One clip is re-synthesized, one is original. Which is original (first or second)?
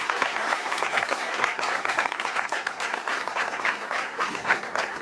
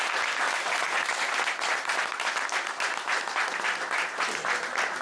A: second